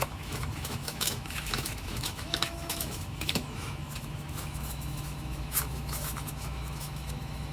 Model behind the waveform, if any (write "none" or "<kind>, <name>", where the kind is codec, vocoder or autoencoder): autoencoder, DAC-VAE